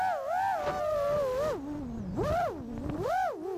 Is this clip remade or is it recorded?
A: recorded